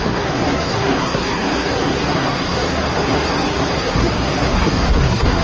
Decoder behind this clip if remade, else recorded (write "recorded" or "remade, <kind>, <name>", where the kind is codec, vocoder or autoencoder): remade, codec, SNAC